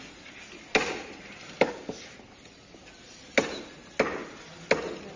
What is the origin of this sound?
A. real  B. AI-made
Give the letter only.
A